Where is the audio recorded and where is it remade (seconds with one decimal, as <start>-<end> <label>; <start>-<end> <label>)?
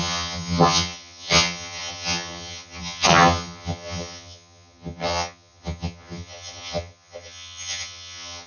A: 0.0-8.5 remade